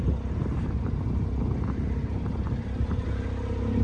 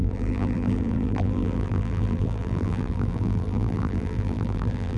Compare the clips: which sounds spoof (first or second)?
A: second